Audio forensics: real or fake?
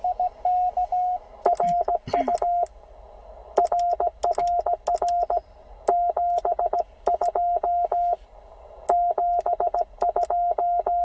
real